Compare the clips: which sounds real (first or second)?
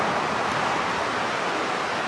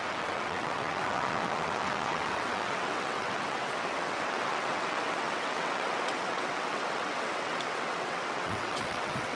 first